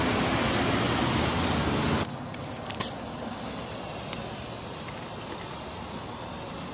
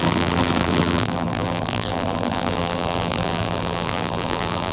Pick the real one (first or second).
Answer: first